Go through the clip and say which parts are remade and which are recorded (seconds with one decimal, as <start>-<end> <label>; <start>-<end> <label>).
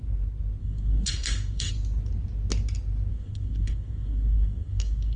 0.0-0.6 recorded; 0.6-1.7 remade; 1.7-3.1 recorded; 3.1-5.2 remade